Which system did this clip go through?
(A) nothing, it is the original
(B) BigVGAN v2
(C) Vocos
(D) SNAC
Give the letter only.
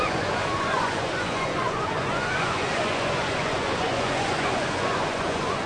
C